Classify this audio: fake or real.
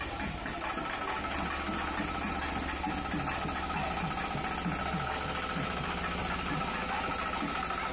real